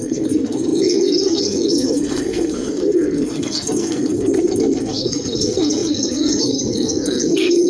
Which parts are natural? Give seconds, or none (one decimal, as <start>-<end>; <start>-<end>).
none